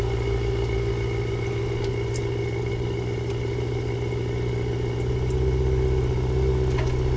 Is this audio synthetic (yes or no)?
no